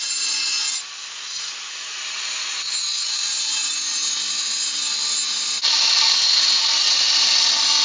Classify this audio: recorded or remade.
recorded